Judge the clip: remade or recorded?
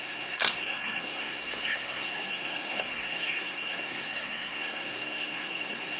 remade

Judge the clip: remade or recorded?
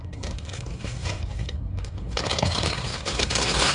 remade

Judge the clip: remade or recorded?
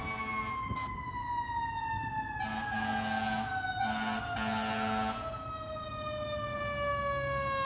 recorded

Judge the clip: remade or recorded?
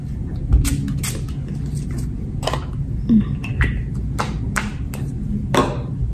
recorded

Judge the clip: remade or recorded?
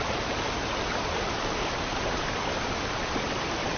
recorded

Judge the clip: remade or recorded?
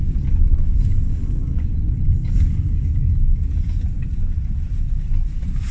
recorded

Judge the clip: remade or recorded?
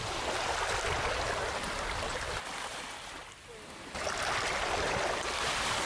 recorded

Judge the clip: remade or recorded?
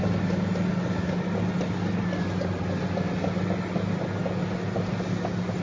recorded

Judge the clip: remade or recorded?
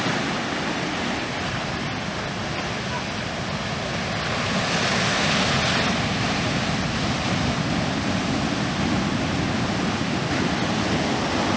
recorded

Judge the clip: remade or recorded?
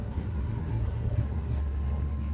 remade